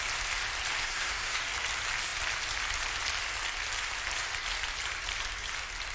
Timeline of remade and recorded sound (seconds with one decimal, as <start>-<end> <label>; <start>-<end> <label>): 0.0-0.8 recorded; 0.8-1.4 remade; 1.4-5.9 recorded